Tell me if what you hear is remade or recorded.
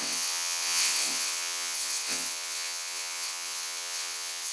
remade